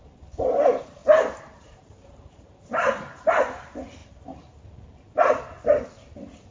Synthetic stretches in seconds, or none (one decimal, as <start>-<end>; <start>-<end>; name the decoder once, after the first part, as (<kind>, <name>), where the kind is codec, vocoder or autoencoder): 1.0-3.3 (vocoder, BigVGAN v2)